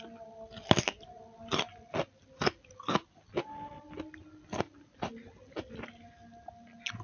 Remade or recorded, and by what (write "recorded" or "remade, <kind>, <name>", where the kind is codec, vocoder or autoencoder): recorded